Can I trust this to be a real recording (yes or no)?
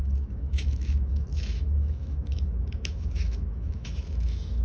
no